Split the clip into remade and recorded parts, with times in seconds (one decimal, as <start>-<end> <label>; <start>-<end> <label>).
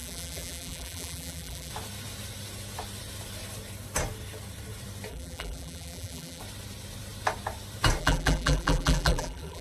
0.0-1.7 remade; 1.7-5.1 recorded; 5.1-6.4 remade; 6.4-8.0 recorded; 8.0-9.6 remade